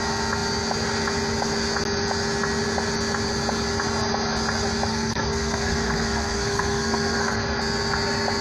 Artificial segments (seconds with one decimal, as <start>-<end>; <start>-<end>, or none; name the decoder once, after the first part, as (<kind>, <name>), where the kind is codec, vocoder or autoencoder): 4.9-7.6 (codec, SNAC)